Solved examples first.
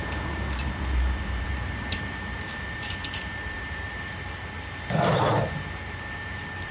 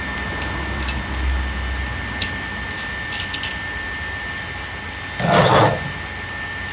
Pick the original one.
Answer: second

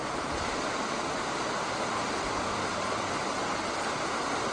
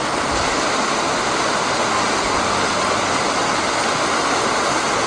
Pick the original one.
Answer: second